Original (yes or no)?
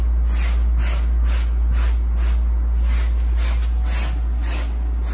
yes